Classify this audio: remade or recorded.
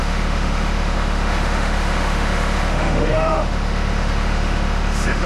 remade